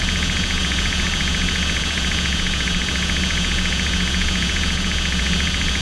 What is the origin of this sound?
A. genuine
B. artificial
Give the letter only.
B